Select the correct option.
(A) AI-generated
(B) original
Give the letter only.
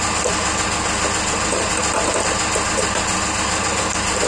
B